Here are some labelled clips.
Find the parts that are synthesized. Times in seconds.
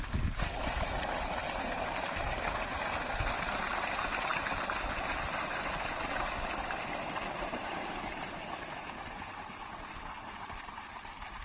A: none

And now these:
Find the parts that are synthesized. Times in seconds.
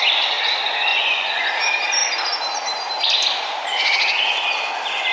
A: 0.9-1.5 (vocoder, Vocos)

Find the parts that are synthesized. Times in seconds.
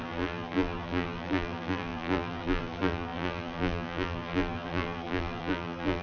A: 0.0-6.0 (vocoder, BigVGAN v2)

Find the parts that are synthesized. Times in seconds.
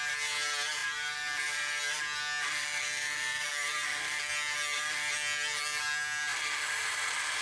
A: 0.8-1.8 (vocoder, BigVGAN v2); 2.6-4.3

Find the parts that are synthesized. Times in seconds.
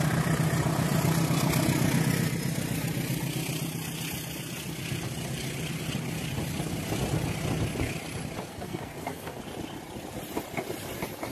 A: 8.5-9.4 (codec, SNAC)